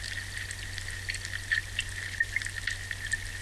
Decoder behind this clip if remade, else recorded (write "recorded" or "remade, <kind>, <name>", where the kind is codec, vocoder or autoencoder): recorded